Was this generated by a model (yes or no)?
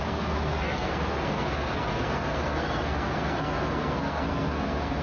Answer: yes